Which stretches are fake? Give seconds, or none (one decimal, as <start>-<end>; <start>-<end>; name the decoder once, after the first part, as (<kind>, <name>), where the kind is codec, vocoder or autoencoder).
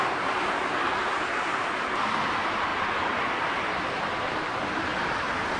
2.7-3.7 (vocoder, BigVGAN v2)